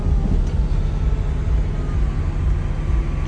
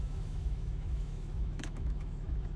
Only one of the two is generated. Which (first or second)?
second